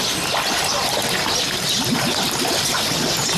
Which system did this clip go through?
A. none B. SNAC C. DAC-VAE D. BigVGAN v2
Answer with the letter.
A